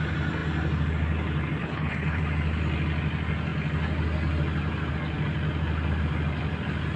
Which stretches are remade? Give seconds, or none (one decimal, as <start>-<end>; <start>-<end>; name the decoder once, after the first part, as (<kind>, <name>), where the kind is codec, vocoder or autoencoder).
1.6-2.2 (codec, HILCodec)